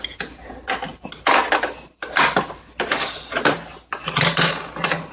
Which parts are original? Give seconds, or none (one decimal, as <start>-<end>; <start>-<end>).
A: 0.0-5.1